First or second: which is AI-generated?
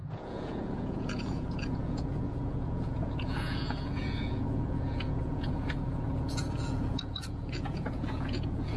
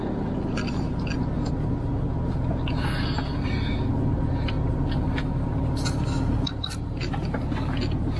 first